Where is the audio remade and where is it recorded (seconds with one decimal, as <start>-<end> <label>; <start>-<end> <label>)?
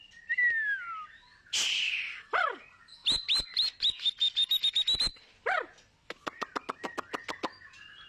0.0-8.1 recorded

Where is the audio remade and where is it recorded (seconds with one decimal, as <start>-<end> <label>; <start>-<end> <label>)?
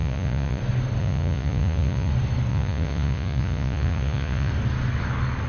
0.0-0.6 remade; 0.6-1.0 recorded; 1.0-2.1 remade; 2.1-2.5 recorded; 2.5-4.5 remade; 4.5-5.5 recorded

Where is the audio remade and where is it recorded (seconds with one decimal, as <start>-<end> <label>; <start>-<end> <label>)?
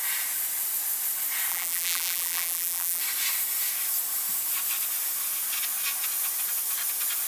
0.0-1.5 recorded; 1.5-3.0 remade; 3.0-7.3 recorded